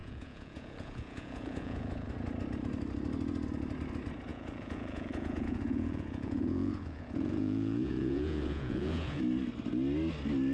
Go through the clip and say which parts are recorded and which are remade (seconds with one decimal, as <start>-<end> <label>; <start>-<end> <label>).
0.0-2.1 remade; 2.1-4.3 recorded; 4.3-9.2 remade; 9.2-10.5 recorded